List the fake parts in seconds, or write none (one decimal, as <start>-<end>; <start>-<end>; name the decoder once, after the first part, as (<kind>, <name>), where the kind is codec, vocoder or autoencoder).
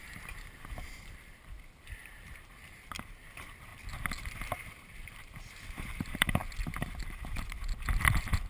0.0-3.7 (vocoder, BigVGAN v2); 4.3-6.4; 7.1-8.5